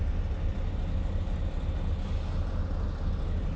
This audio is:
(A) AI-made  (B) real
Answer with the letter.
B